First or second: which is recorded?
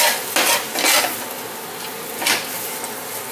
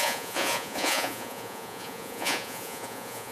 first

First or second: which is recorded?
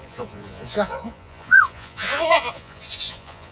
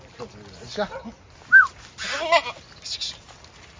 second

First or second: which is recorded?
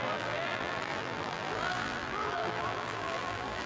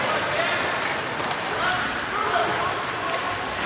second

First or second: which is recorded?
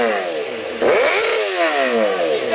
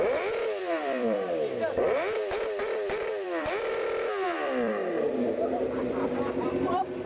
first